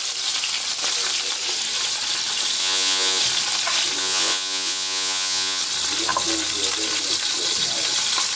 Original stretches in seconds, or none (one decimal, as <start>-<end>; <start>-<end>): 0.0-2.6; 3.2-4.0; 5.6-8.4